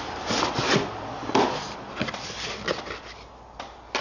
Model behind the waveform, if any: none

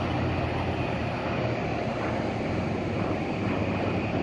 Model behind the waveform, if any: none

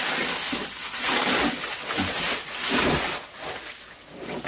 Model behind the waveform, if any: none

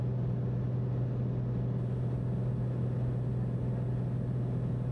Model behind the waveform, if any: none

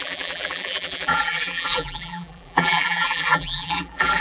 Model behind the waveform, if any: vocoder, BigVGAN v2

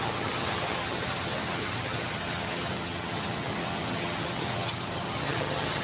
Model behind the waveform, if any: vocoder, HiFi-GAN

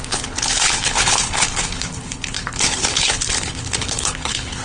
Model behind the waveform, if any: codec, HILCodec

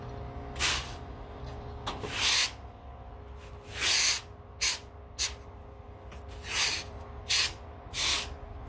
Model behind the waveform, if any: none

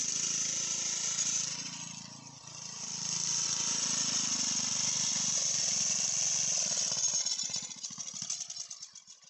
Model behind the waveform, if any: none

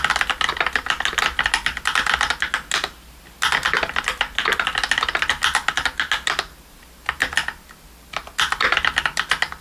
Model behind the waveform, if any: none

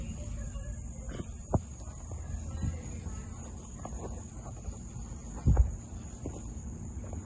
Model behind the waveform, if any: none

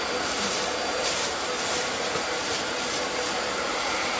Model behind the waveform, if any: vocoder, BigVGAN v2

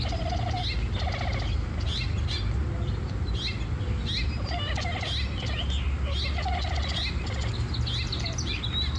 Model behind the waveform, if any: none